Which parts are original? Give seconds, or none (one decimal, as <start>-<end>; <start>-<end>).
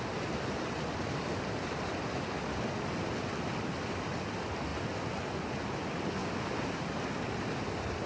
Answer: 0.0-8.1